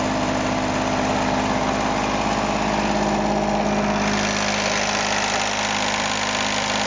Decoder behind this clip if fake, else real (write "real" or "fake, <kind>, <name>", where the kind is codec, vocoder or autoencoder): real